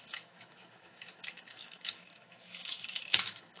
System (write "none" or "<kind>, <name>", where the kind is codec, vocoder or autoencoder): autoencoder, DAC-VAE